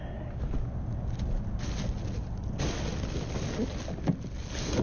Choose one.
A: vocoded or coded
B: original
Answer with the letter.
B